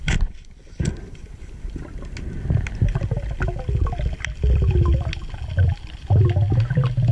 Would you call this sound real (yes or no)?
yes